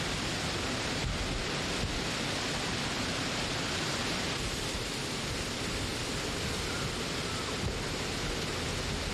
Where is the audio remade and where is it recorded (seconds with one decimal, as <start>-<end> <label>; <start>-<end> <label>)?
0.0-9.1 recorded